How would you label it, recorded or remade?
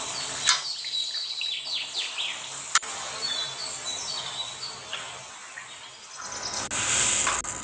recorded